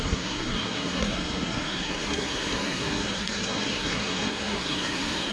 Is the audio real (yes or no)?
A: no